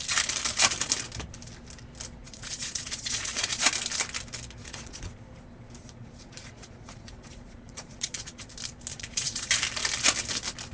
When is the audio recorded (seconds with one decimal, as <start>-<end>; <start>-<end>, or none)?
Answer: 0.0-2.2; 3.6-4.6; 5.1-5.8; 8.5-8.9; 9.5-10.7

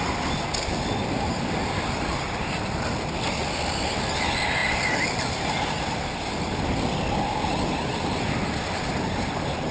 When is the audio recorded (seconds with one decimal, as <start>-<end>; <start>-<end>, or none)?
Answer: 0.0-9.7

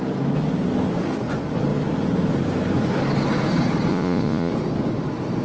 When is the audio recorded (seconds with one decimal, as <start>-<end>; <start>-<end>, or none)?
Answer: 0.0-3.9; 4.5-5.4

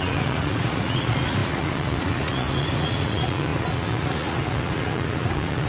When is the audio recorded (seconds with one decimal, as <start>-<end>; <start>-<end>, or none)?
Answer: none

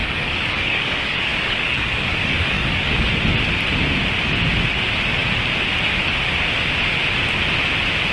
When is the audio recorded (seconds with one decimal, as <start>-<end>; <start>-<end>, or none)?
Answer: 3.1-8.1

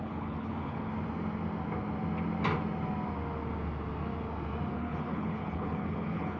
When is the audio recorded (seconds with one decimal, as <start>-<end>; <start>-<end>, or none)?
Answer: 0.9-4.7

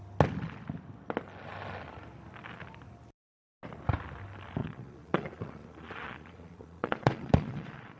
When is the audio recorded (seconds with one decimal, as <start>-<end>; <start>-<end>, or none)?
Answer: 0.0-4.6